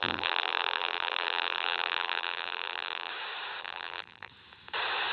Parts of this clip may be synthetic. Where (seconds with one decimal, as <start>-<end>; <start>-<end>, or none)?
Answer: 0.0-3.1; 3.6-4.3